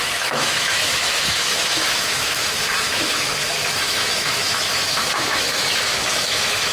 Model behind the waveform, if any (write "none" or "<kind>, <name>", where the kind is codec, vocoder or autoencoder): autoencoder, DAC-VAE